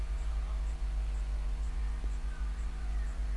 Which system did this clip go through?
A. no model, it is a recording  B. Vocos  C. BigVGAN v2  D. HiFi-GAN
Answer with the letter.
B